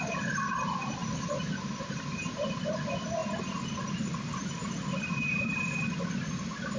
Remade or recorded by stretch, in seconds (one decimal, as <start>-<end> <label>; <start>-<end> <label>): 0.0-1.0 recorded; 1.0-1.5 remade; 1.5-6.8 recorded